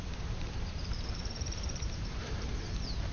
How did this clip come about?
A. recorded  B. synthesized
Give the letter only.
B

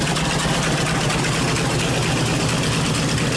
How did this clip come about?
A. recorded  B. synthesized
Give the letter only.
A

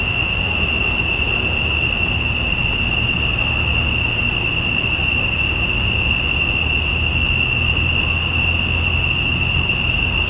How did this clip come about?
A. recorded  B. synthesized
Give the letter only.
A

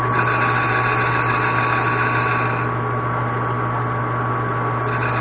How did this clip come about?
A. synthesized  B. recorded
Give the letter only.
B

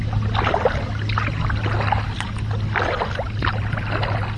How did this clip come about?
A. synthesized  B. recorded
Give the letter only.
B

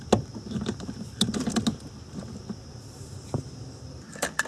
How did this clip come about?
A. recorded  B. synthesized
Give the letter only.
A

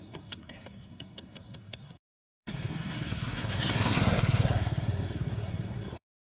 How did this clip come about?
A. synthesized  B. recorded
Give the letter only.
A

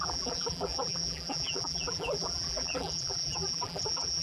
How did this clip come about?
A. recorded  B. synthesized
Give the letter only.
B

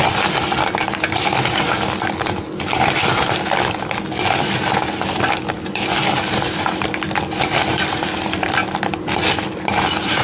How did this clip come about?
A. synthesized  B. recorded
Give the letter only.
B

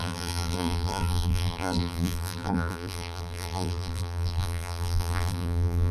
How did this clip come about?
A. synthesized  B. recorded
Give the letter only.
A